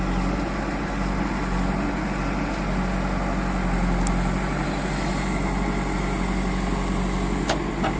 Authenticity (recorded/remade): recorded